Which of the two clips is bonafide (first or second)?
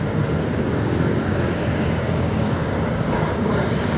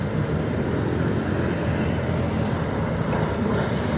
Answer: second